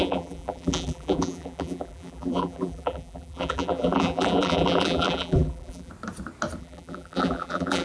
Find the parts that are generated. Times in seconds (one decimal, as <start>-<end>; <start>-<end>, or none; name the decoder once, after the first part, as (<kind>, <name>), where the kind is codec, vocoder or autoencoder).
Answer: 0.0-5.9 (vocoder, BigVGAN v2); 6.6-7.8